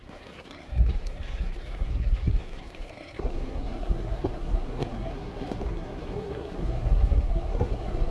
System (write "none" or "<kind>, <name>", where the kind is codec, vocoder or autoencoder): codec, SNAC